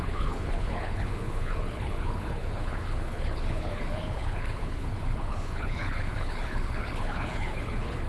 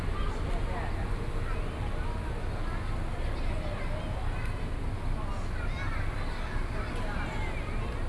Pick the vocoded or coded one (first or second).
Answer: first